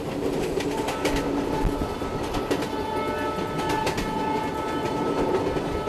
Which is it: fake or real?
real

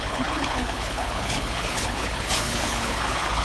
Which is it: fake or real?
fake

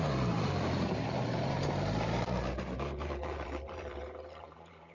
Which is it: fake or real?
fake